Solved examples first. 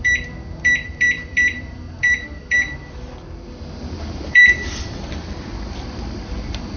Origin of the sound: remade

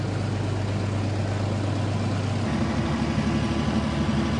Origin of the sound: recorded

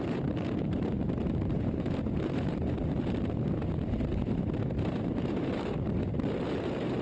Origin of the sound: remade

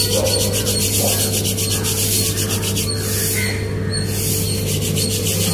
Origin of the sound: recorded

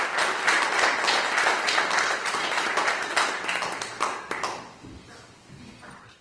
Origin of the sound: recorded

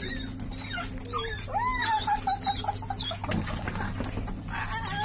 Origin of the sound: recorded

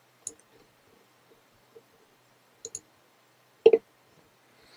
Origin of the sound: recorded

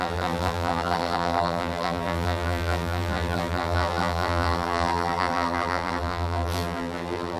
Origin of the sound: remade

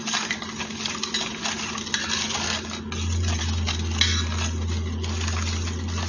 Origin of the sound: recorded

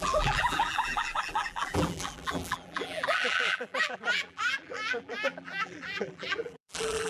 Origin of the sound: remade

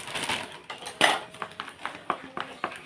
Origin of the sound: recorded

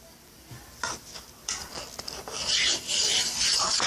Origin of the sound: remade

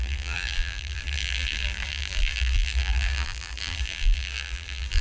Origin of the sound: remade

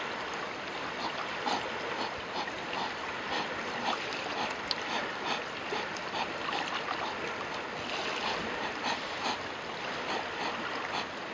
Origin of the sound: recorded